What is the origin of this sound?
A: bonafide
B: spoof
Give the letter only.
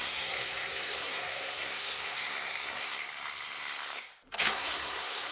B